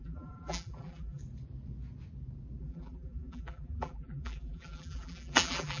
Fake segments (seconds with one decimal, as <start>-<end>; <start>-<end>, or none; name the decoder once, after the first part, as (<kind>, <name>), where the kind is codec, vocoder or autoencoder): 0.0-1.2 (vocoder, BigVGAN v2); 2.6-5.8